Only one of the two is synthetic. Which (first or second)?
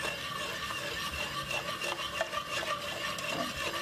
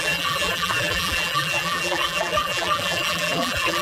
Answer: second